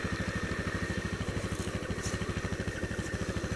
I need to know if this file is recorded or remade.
recorded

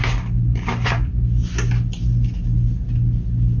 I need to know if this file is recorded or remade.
recorded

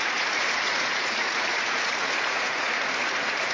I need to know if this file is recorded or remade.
remade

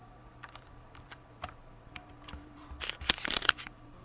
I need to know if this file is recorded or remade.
remade